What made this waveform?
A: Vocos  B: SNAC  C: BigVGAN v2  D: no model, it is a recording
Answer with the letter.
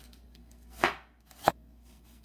B